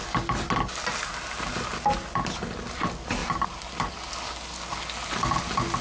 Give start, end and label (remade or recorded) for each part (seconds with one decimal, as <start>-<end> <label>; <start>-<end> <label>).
0.0-5.8 recorded